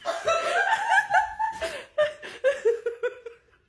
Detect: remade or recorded recorded